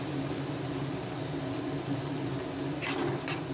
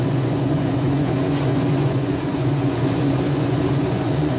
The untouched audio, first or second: first